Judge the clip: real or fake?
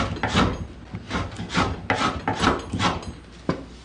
real